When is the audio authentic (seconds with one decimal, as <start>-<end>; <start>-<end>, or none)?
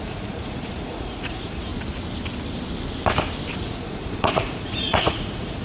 1.7-3.6